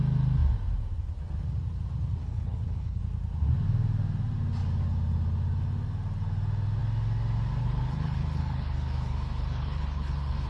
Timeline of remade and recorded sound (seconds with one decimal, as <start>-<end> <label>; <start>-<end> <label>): 0.0-2.2 recorded; 2.2-3.0 remade; 3.0-7.6 recorded; 7.6-10.5 remade